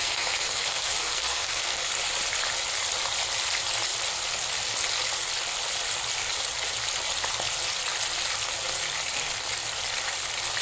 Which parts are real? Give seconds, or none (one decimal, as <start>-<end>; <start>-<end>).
1.9-10.6